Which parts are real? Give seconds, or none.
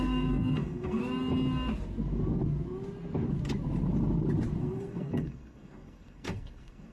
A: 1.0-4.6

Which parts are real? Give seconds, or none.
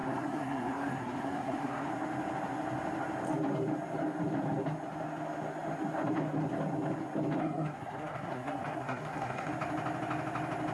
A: 1.9-7.4; 9.5-10.7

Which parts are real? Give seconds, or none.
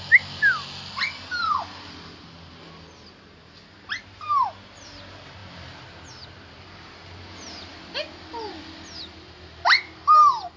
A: 0.0-10.6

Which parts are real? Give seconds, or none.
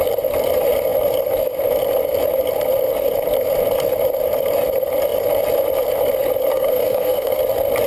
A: 0.0-6.5; 7.4-7.9